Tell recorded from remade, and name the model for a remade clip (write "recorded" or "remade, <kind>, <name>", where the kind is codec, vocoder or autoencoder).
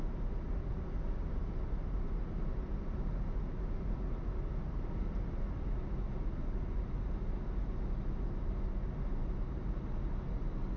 recorded